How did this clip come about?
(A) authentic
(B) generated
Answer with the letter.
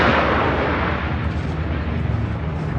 A